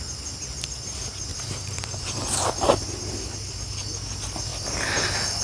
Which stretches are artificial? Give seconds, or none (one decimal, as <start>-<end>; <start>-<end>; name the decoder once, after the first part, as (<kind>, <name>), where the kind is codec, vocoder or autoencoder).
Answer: 1.3-2.8 (vocoder, BigVGAN v2)